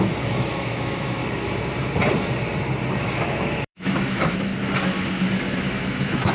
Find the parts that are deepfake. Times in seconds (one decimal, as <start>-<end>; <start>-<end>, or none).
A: 0.0-1.2; 3.0-4.5; 5.6-6.3